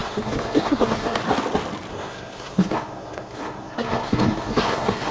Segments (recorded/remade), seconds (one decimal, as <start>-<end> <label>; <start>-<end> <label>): 0.0-1.2 remade; 1.2-1.9 recorded; 1.9-5.1 remade